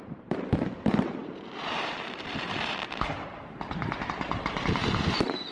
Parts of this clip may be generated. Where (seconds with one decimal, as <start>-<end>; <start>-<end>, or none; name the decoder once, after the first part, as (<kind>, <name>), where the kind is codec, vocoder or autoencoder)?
0.0-5.5 (vocoder, BigVGAN v2)